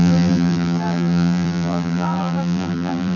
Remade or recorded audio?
remade